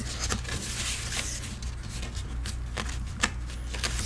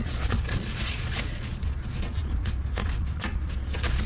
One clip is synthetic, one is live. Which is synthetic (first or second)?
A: second